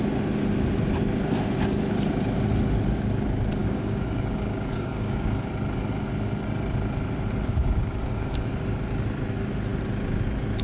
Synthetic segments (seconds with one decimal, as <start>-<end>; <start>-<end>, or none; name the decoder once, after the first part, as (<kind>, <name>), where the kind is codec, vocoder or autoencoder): 3.6-5.5 (codec, DAC); 7.5-8.5